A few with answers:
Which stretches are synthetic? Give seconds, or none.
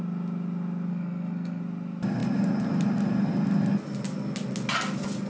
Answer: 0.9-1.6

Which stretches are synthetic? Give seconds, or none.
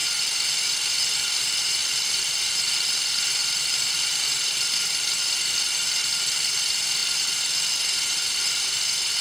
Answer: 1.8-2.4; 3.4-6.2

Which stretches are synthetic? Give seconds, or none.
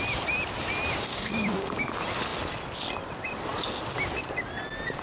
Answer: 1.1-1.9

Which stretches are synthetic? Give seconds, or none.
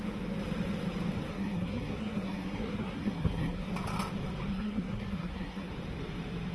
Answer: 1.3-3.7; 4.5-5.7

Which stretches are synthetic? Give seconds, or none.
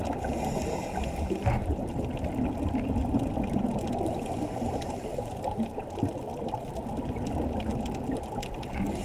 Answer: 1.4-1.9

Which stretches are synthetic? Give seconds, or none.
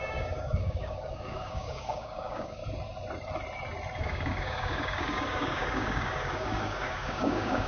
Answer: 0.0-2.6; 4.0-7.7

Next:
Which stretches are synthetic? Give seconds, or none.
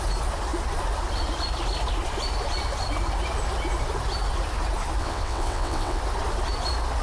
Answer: 5.0-6.0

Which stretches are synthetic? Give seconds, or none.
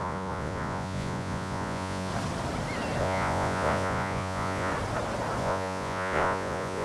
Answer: 0.0-2.1; 3.0-4.7; 5.4-6.8